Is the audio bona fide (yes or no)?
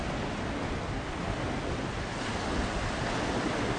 yes